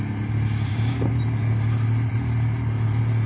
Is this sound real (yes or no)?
yes